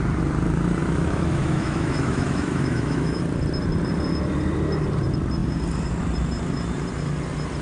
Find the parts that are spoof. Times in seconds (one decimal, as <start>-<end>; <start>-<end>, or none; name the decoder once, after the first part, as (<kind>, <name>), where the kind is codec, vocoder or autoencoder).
0.8-3.2 (autoencoder, DAC-VAE)